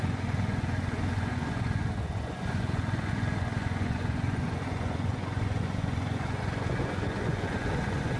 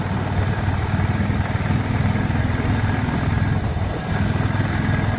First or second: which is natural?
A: second